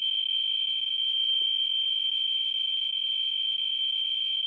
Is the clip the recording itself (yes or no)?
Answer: yes